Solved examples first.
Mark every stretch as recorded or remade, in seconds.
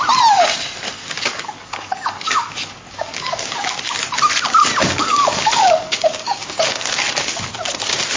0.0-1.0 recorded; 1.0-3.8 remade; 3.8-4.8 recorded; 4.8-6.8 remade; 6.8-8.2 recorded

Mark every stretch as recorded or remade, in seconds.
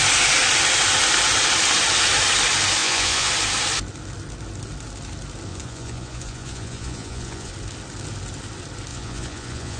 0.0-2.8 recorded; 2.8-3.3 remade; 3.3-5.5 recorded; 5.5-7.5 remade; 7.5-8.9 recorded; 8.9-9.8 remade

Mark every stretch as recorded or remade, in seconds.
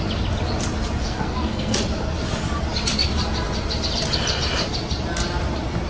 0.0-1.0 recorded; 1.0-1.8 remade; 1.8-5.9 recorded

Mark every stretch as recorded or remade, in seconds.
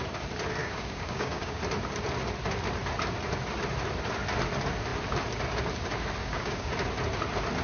0.0-0.6 recorded; 0.6-1.6 remade; 1.6-6.2 recorded; 6.2-6.7 remade; 6.7-7.6 recorded